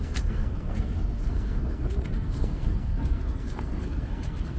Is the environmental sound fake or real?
fake